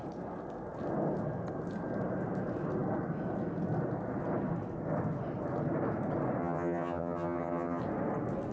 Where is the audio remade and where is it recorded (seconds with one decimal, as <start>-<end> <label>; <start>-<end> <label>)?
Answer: 0.0-6.4 recorded; 6.4-7.8 remade; 7.8-8.5 recorded